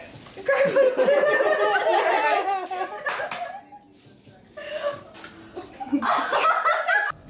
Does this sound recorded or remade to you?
recorded